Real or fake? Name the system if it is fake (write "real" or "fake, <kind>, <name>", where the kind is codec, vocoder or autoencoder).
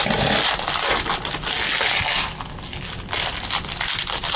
real